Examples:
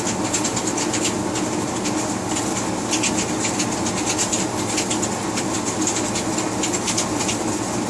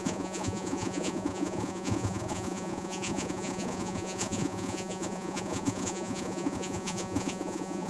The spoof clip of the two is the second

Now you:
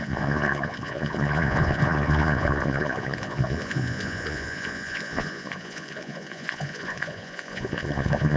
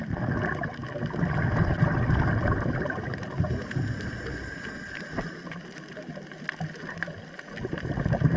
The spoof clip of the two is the first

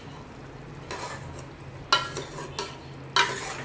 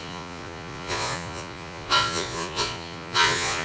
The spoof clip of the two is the second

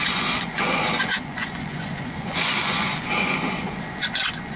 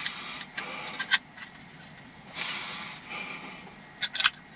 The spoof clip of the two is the first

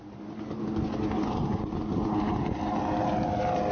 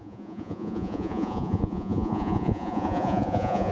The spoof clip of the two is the second